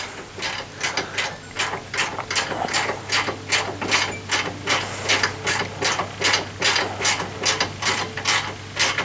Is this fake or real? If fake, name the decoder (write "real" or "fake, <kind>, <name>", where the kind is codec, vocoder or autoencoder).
real